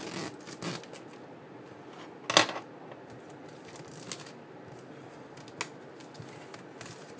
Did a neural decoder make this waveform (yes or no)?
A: no